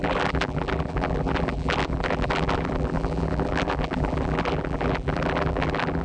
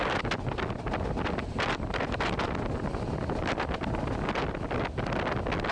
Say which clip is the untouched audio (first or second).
second